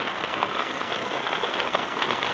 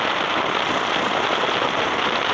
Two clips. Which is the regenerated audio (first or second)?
first